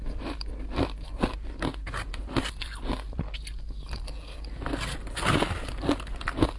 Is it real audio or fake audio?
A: real